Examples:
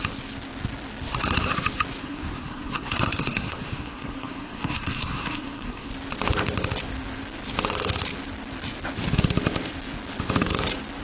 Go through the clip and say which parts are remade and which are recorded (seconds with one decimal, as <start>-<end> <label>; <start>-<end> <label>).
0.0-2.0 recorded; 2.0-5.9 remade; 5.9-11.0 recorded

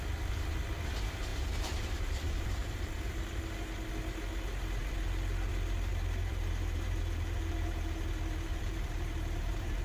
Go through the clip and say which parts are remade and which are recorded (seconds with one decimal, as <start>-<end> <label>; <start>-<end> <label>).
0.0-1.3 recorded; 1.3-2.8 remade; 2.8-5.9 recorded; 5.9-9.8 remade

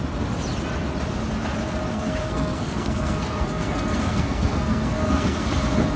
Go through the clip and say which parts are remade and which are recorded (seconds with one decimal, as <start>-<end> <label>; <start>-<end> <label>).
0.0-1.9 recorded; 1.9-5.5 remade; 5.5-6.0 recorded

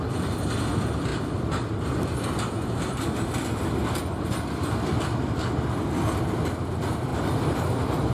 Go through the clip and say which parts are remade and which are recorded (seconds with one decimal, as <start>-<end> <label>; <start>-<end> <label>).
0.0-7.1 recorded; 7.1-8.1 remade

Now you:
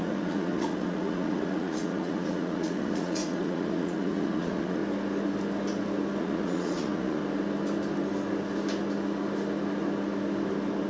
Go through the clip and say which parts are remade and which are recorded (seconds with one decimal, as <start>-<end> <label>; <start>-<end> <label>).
0.0-4.8 remade; 4.8-6.2 recorded; 6.2-7.2 remade; 7.2-10.9 recorded

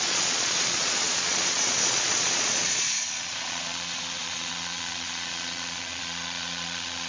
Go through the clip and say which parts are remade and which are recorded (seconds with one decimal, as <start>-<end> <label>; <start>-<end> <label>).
0.0-7.1 remade

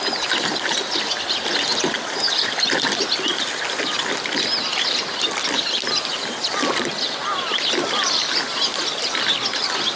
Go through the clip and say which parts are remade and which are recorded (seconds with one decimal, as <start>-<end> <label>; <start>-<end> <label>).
0.0-4.0 recorded; 4.0-6.0 remade; 6.0-7.2 recorded; 7.2-8.3 remade; 8.3-10.0 recorded